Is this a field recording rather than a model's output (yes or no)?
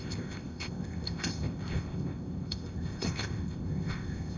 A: no